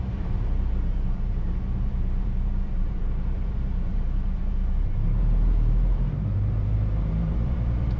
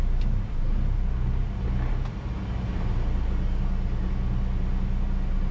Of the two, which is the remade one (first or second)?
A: first